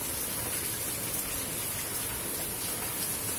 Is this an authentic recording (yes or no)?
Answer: yes